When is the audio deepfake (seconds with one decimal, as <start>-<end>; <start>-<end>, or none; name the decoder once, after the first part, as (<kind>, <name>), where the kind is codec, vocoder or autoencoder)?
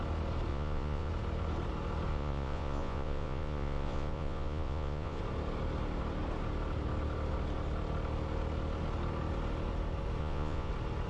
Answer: 0.5-1.1 (vocoder, Vocos); 2.1-5.2; 10.2-10.7